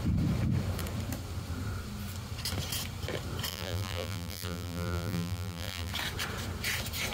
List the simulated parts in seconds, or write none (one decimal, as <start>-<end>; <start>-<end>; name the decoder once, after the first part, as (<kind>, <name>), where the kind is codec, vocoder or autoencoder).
3.5-5.9 (vocoder, BigVGAN v2)